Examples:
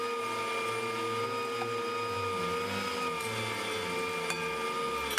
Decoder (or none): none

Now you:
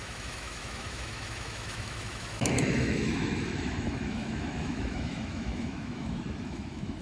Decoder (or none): autoencoder, DAC-VAE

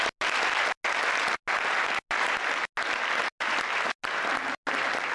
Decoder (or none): none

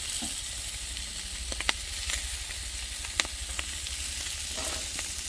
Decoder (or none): none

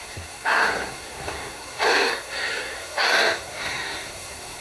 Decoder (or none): codec, SNAC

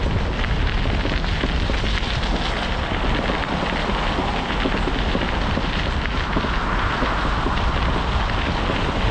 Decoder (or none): none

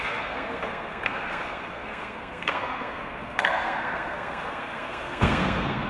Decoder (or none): codec, SNAC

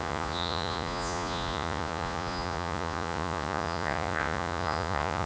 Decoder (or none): vocoder, Vocos